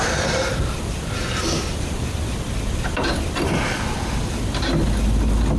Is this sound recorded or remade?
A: remade